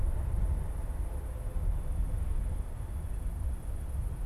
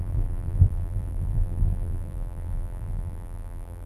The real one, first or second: first